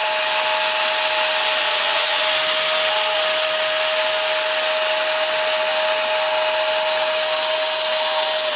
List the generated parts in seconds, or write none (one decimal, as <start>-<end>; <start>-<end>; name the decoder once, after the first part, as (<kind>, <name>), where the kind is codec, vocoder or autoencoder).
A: 1.6-2.2 (vocoder, WaveNeXt)